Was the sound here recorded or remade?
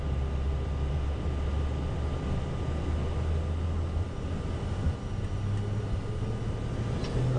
recorded